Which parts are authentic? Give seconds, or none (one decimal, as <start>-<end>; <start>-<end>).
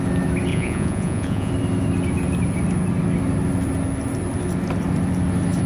0.0-0.5; 1.5-5.7